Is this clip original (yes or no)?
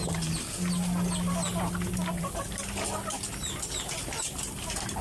yes